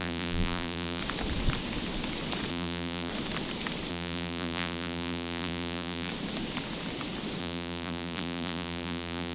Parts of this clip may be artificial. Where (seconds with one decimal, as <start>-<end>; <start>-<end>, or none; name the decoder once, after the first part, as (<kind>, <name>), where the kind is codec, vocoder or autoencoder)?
0.0-1.0 (vocoder, BigVGAN v2); 2.5-3.1; 3.9-6.1; 7.4-9.3